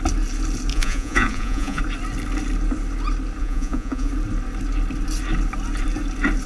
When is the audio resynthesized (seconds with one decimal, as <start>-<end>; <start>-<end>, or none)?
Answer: 0.7-1.8; 3.4-4.1